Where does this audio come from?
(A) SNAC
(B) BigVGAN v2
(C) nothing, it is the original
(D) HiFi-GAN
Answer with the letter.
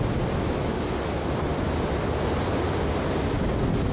C